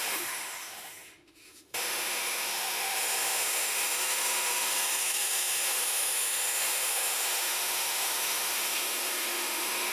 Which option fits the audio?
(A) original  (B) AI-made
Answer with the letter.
B